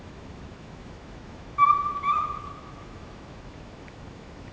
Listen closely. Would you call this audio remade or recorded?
remade